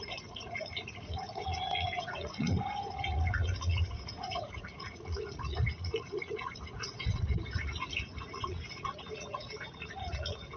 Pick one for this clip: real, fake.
fake